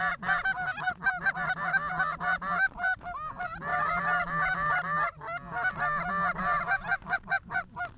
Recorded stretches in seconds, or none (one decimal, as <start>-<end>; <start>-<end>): 0.0-8.0